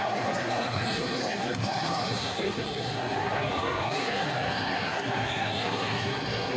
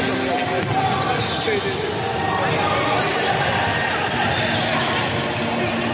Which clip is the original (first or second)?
second